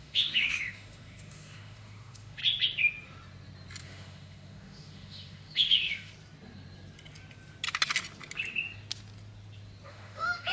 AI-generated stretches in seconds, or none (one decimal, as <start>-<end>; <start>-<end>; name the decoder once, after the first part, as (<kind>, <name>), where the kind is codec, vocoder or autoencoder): 0.0-2.4 (autoencoder, DAC-VAE); 3.8-6.1; 9.9-10.5